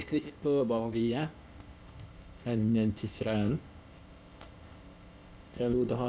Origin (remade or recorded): remade